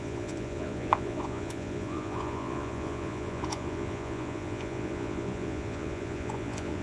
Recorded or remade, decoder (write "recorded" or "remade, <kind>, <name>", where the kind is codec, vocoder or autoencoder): remade, vocoder, Vocos